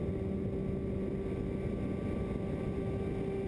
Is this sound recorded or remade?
recorded